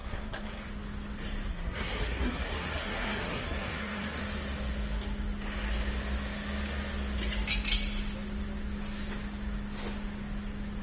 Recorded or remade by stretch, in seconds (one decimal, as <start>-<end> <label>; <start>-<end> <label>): 0.0-0.7 remade; 0.7-1.5 recorded; 1.5-4.2 remade; 4.2-10.8 recorded

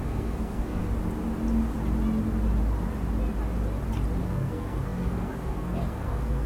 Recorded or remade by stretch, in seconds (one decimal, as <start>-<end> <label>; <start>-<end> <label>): 0.0-0.8 remade; 0.8-4.2 recorded; 4.2-6.5 remade

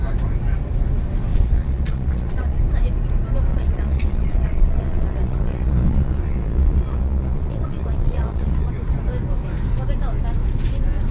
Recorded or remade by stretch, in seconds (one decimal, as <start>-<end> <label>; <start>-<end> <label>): 0.0-1.3 recorded; 1.3-2.6 remade; 2.6-3.5 recorded; 3.5-8.7 remade; 8.7-11.1 recorded

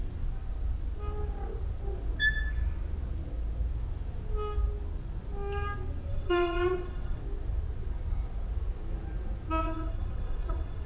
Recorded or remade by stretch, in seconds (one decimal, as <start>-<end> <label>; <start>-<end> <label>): 0.0-6.1 recorded; 6.1-7.2 remade; 7.2-9.6 recorded; 9.6-10.9 remade

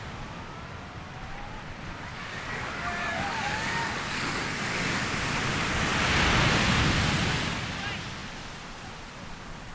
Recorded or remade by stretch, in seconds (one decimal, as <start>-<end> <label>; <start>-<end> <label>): 0.0-2.1 recorded; 2.1-5.0 remade; 5.0-9.7 recorded

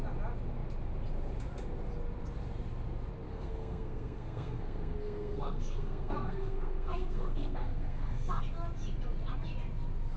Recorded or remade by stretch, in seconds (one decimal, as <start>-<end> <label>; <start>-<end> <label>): 0.0-3.3 recorded; 3.3-8.4 remade; 8.4-10.2 recorded

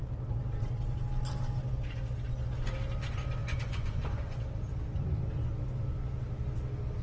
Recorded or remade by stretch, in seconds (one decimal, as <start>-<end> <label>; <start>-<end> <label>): 0.0-3.4 recorded; 3.4-4.4 remade; 4.4-7.0 recorded